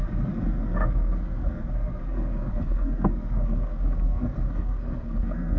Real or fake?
fake